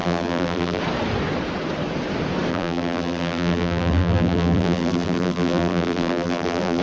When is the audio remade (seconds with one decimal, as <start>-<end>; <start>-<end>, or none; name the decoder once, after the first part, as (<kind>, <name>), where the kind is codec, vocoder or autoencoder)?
0.0-0.8 (vocoder, BigVGAN v2); 2.5-6.8